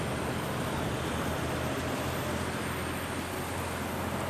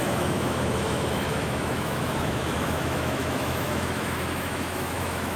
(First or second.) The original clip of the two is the first